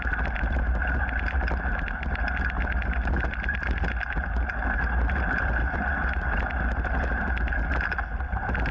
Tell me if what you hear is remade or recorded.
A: recorded